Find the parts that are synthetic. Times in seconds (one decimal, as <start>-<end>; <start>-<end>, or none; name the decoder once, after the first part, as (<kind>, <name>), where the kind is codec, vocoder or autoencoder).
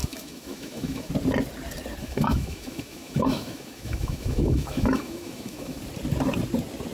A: 0.0-1.1 (autoencoder, DAC-VAE); 2.0-5.8